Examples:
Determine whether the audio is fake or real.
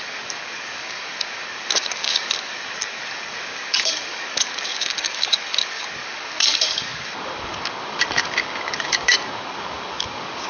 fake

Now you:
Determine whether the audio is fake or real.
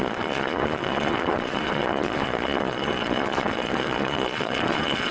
fake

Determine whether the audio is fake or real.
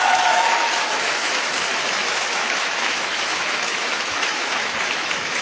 fake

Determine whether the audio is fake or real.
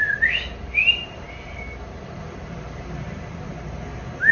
real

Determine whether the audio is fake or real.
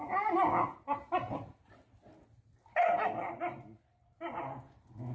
real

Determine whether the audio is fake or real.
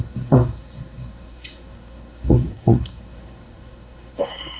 fake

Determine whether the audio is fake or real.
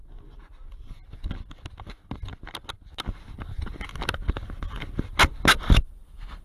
real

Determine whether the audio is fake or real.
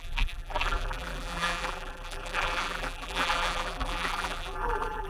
fake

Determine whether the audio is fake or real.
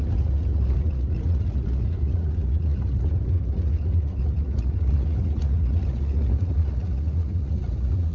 fake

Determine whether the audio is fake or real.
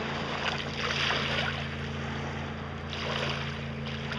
real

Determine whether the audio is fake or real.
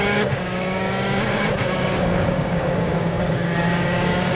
fake